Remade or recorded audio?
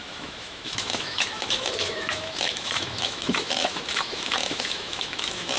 remade